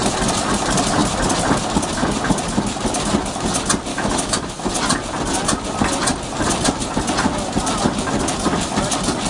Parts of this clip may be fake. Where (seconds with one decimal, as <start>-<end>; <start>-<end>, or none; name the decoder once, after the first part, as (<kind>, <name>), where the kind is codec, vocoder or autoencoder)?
3.9-4.7 (autoencoder, DAC-VAE)